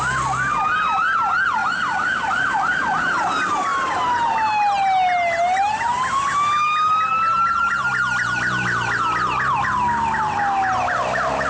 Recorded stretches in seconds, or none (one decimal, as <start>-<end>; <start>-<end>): 0.0-11.5